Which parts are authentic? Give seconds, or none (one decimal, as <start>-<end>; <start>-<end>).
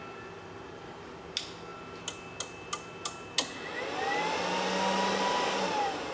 0.0-6.1